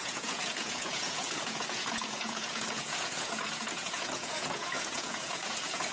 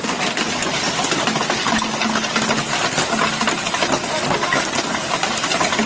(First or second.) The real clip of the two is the second